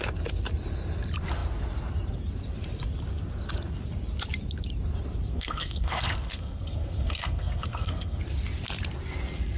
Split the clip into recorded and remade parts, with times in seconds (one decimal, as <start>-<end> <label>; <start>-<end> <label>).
0.0-5.3 recorded; 5.3-8.2 remade; 8.2-9.6 recorded